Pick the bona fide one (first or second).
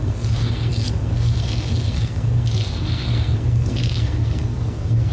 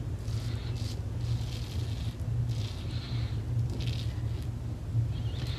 second